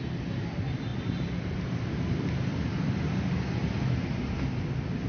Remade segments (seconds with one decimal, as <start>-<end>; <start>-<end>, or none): 0.9-4.0